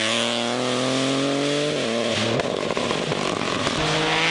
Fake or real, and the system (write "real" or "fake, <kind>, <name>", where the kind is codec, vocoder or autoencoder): real